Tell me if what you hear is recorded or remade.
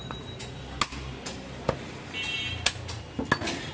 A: recorded